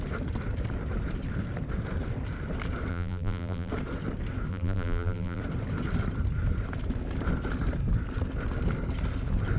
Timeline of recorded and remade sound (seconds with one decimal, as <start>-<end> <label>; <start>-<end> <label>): 0.0-2.9 recorded; 2.9-3.7 remade; 3.7-4.5 recorded; 4.5-5.4 remade; 5.4-9.6 recorded